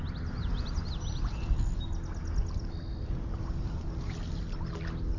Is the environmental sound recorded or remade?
recorded